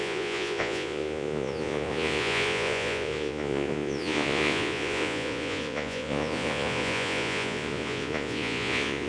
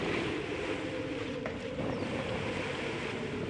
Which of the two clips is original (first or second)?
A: second